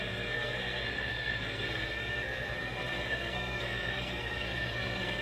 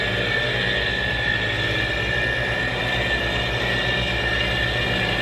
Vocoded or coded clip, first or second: first